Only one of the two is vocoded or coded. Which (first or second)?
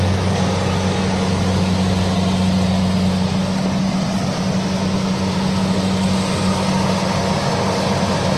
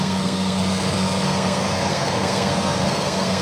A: second